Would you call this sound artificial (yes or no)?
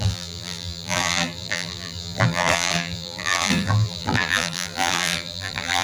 yes